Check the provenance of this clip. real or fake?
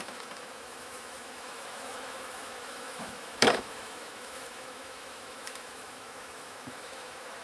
fake